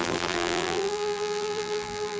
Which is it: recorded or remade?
remade